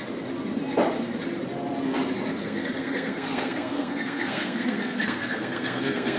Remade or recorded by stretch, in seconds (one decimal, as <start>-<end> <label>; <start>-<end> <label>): 0.0-2.4 recorded; 2.4-6.2 remade